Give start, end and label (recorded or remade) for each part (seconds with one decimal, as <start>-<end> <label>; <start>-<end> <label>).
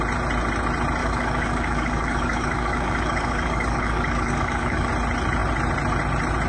0.0-1.0 recorded; 1.0-4.9 remade; 4.9-6.5 recorded